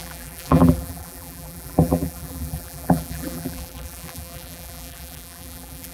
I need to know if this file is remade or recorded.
remade